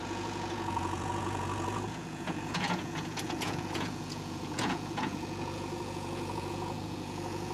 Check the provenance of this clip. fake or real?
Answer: fake